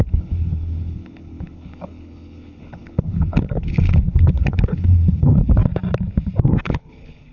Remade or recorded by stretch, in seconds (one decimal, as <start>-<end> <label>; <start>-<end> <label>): 0.0-5.6 remade; 5.6-6.6 recorded; 6.6-7.3 remade

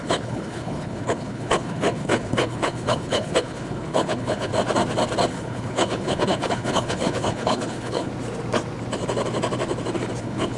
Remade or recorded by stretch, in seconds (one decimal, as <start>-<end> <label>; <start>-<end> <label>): 0.0-4.5 remade; 4.5-5.3 recorded; 5.3-8.1 remade; 8.1-10.2 recorded; 10.2-10.6 remade

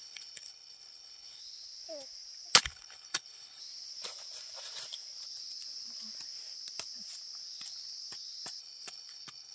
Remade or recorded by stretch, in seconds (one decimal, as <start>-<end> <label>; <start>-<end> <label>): 0.0-1.4 remade; 1.4-2.6 recorded; 2.6-3.6 remade; 3.6-8.6 recorded; 8.6-9.5 remade

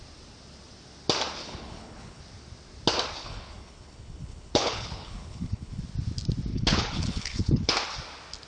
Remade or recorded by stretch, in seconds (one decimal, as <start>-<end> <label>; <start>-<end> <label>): 0.0-1.4 recorded; 1.4-2.2 remade; 2.2-3.2 recorded; 3.2-5.8 remade; 5.8-6.5 recorded; 6.5-7.7 remade; 7.7-8.5 recorded

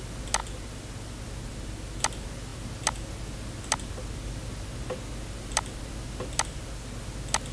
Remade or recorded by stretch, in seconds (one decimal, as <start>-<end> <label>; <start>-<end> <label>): 0.0-7.5 recorded

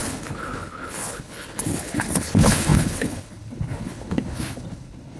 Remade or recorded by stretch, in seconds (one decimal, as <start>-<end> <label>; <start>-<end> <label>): 0.0-5.2 remade